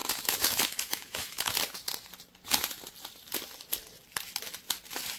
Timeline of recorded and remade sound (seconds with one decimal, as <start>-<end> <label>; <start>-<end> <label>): 0.0-1.5 remade; 1.5-5.2 recorded